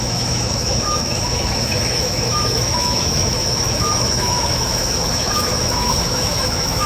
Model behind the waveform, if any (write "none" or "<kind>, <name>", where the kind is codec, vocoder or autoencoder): autoencoder, DAC-VAE